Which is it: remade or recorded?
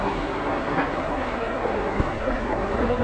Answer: remade